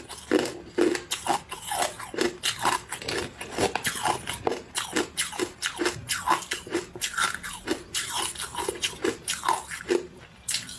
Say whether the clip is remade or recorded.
recorded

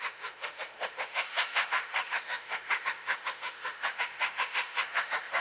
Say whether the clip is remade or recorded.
remade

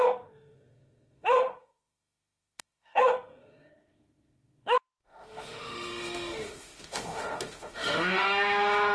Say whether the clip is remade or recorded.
remade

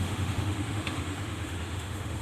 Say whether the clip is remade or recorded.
remade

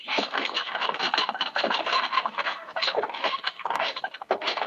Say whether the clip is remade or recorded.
remade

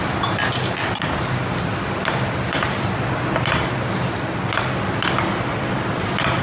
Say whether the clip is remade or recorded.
recorded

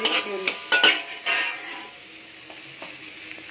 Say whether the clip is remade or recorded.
recorded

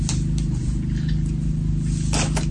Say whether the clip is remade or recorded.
recorded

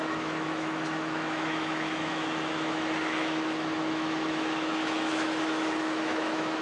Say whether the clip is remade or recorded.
remade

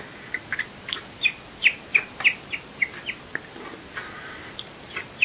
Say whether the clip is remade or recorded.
recorded